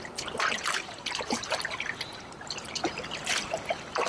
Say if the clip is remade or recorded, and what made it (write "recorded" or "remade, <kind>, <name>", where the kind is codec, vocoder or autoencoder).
recorded